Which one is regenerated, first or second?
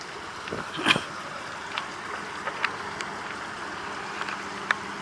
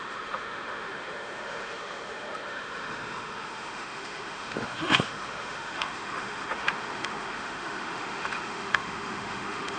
second